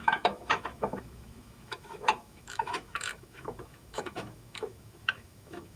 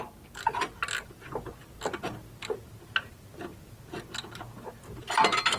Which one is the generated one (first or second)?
first